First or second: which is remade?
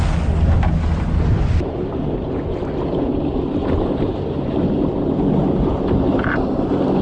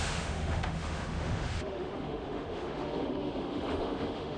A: second